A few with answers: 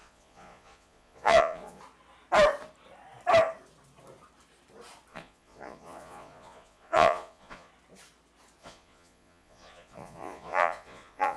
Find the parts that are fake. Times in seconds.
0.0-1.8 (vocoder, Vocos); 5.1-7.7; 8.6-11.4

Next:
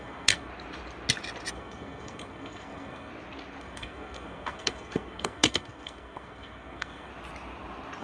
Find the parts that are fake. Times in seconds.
0.0-0.5 (codec, SNAC); 1.5-3.1; 3.6-7.1

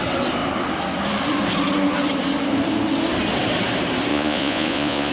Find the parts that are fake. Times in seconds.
4.1-5.1 (vocoder, Vocos)

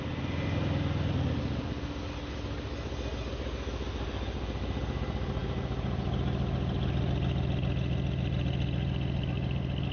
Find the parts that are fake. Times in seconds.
none

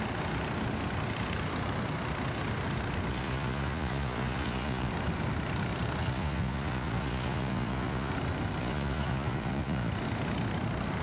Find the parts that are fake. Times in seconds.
3.1-4.9 (vocoder, Vocos); 6.0-8.1; 8.6-9.9

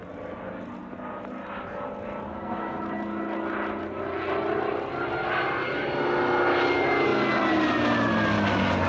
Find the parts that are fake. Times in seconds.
2.3-2.8 (codec, SNAC)